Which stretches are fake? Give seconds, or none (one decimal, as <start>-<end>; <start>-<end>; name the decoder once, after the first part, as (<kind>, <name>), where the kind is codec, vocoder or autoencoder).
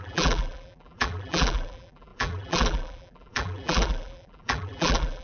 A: 0.0-5.2 (vocoder, BigVGAN v2)